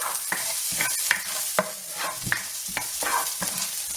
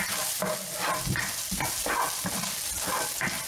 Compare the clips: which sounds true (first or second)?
second